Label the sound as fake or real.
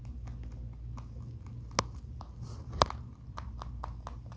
real